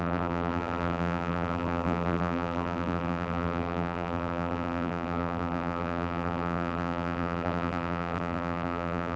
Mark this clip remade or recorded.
remade